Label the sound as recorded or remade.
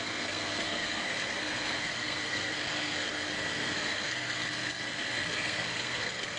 remade